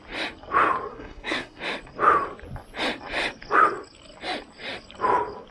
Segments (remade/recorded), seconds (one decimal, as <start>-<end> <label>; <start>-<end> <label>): 0.0-0.9 recorded; 0.9-1.6 remade; 1.6-5.5 recorded